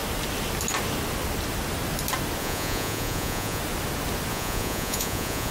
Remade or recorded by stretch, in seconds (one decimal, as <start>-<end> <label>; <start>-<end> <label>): 0.0-2.4 recorded; 2.4-3.6 remade; 3.6-4.3 recorded; 4.3-5.5 remade